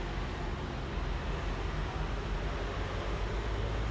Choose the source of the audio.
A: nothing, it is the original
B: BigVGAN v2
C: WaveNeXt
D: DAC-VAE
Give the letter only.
A